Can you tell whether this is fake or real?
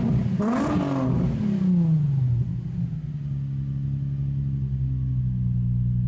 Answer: real